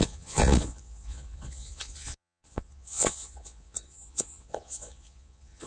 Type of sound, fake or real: fake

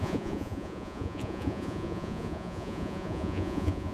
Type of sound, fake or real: fake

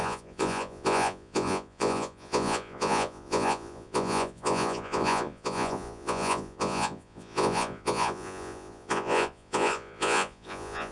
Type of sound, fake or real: fake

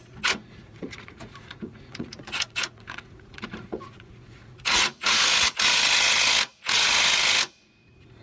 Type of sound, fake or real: fake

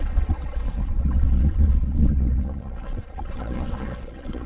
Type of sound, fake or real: fake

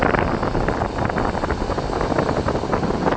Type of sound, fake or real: real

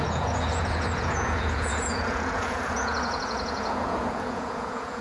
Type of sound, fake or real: fake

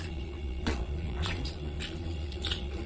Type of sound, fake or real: fake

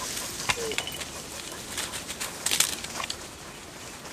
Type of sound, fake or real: real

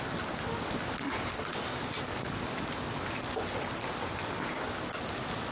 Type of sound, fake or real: real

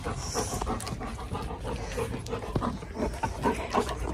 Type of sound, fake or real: real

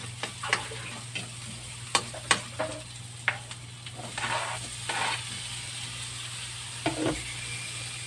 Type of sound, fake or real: real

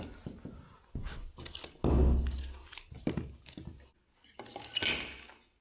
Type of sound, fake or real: real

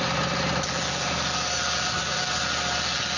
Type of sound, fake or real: real